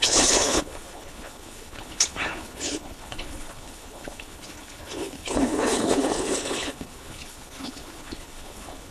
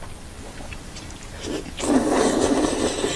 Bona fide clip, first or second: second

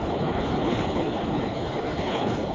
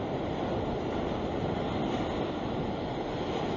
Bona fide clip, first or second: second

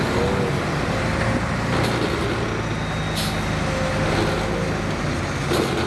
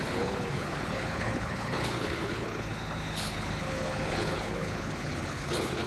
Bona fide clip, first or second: first